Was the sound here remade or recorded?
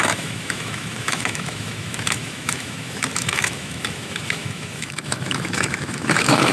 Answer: remade